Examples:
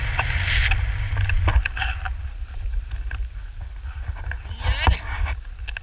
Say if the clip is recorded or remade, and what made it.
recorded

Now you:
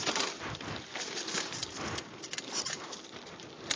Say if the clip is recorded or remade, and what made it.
recorded